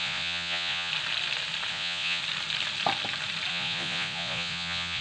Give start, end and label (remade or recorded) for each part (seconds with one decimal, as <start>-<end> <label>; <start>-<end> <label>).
0.0-0.9 remade; 0.9-1.7 recorded; 1.7-2.2 remade; 2.2-3.5 recorded; 3.5-5.0 remade